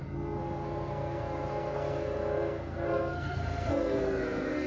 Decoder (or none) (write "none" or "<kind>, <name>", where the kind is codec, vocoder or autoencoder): codec, SNAC